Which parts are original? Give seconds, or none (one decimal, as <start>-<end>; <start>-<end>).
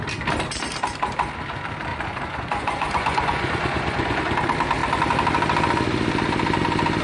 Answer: 0.0-1.9; 4.2-7.0